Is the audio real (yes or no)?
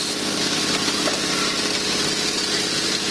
yes